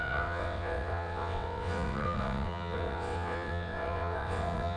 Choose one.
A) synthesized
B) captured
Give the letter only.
A